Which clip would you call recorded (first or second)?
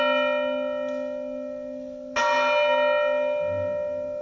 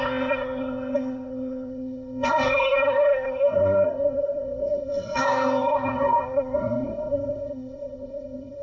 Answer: first